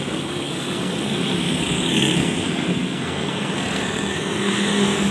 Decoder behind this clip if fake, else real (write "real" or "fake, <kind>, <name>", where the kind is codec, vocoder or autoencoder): fake, codec, SNAC